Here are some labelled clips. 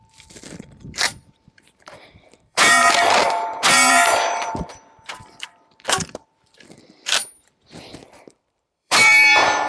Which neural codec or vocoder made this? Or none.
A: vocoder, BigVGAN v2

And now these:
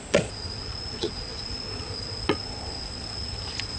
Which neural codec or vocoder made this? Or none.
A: vocoder, Vocos